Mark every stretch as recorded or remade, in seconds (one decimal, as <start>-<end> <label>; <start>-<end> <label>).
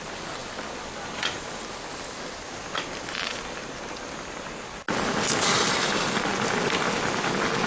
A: 0.0-7.7 recorded